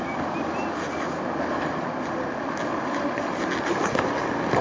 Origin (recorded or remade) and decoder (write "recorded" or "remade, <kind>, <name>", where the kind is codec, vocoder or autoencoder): recorded